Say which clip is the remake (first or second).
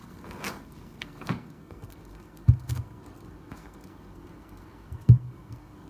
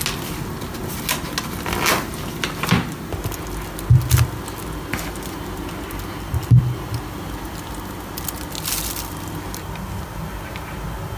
first